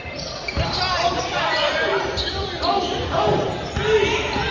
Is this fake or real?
real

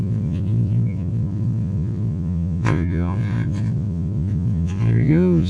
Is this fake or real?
fake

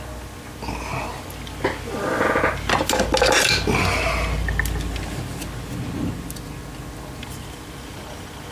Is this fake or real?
real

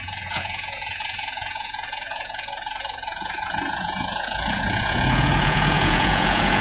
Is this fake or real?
fake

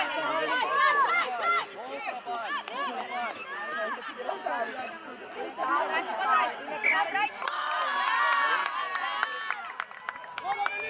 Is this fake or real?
real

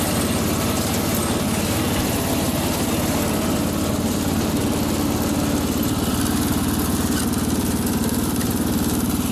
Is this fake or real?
real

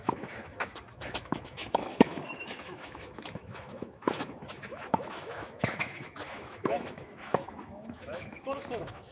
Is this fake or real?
fake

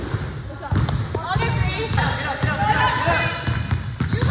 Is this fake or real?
real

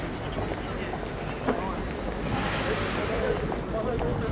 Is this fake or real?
real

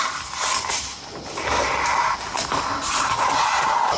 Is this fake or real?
real